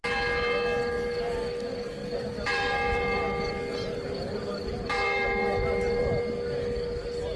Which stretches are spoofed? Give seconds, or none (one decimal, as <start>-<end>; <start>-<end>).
2.0-6.2